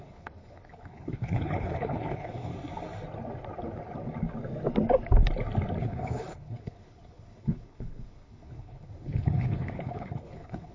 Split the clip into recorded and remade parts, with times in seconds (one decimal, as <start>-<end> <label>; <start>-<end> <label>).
0.0-2.5 remade; 2.5-5.8 recorded; 5.8-10.7 remade